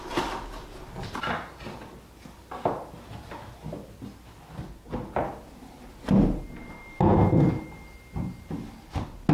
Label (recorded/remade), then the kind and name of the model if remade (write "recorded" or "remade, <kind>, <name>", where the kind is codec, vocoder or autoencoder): recorded